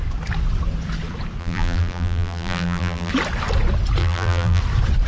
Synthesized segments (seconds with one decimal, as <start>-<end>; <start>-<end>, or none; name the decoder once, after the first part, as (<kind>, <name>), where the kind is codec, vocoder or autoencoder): 1.4-3.1 (vocoder, BigVGAN v2); 4.0-4.6